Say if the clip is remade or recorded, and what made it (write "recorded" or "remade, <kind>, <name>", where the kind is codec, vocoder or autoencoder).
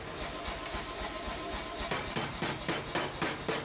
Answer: recorded